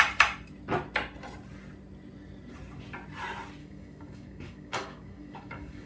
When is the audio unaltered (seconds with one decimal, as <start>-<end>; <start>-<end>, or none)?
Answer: 0.0-3.6